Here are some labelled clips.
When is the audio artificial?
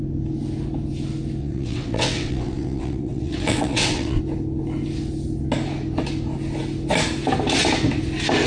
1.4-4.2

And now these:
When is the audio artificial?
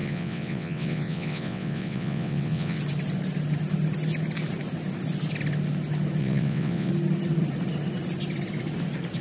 0.0-2.8; 6.2-6.9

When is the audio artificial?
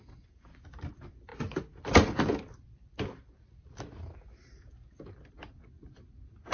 none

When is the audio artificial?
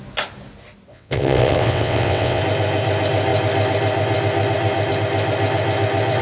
0.9-2.4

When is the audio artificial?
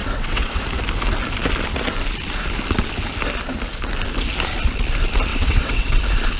0.0-0.6; 5.3-6.0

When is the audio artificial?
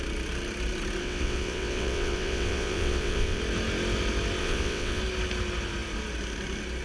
1.0-3.4; 4.4-5.0